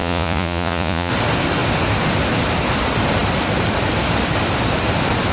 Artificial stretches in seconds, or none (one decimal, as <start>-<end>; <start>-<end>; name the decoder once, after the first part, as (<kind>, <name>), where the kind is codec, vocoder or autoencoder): 0.0-1.1 (vocoder, Vocos)

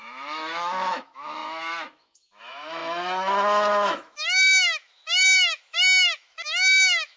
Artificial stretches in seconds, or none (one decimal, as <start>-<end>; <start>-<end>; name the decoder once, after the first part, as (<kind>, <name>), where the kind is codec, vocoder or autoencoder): 0.0-7.2 (autoencoder, DAC-VAE)